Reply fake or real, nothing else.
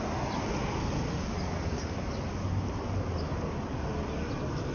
real